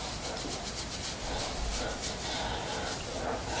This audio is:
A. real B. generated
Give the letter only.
A